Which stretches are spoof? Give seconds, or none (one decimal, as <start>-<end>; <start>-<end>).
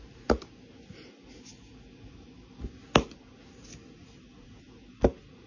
none